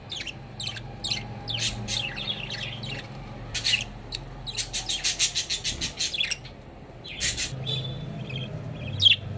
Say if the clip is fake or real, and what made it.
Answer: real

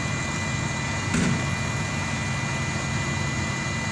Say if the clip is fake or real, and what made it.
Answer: real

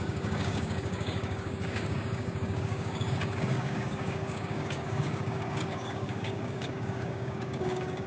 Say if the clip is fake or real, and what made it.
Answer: fake, codec, DAC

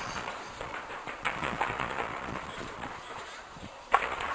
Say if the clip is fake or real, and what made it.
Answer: fake, vocoder, Vocos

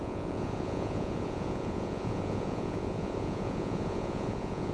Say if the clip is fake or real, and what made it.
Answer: fake, vocoder, Vocos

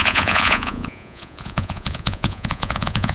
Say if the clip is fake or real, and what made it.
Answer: fake, vocoder, Vocos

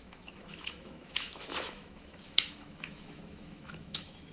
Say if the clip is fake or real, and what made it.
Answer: fake, autoencoder, DAC-VAE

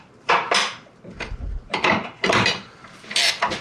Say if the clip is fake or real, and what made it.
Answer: fake, vocoder, BigVGAN v2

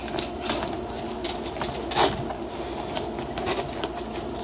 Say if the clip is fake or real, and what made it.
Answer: real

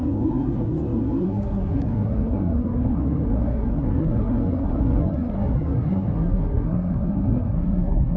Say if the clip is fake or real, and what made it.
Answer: fake, codec, SNAC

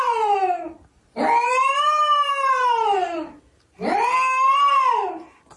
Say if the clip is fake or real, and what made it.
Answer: real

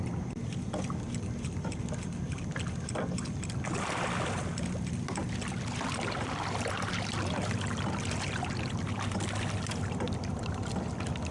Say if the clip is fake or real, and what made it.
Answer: real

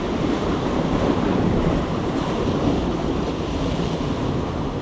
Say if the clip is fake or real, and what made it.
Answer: real